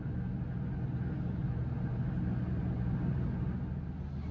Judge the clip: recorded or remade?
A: recorded